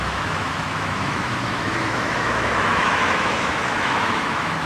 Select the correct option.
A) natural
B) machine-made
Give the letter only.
B